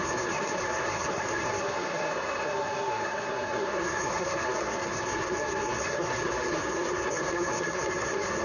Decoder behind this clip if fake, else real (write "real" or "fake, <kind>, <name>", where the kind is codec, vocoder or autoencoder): fake, codec, SNAC